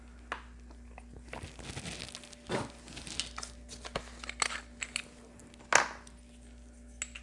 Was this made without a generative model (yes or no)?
yes